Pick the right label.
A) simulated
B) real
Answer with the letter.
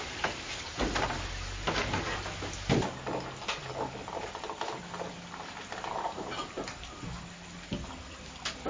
B